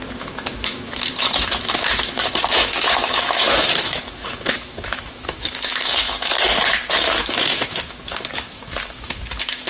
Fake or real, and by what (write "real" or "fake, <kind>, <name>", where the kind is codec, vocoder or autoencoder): fake, autoencoder, DAC-VAE